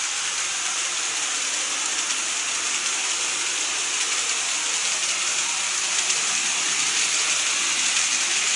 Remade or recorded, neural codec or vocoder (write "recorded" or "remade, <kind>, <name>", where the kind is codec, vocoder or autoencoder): recorded